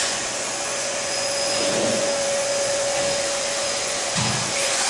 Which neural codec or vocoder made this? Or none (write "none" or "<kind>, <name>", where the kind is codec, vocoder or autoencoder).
vocoder, Vocos